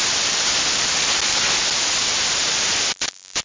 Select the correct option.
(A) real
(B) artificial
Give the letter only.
A